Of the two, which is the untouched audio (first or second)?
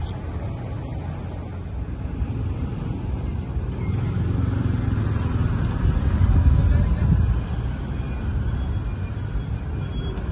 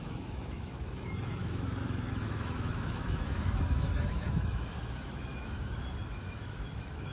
first